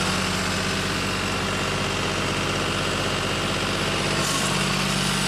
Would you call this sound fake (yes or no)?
no